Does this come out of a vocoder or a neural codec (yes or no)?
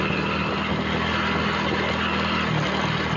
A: no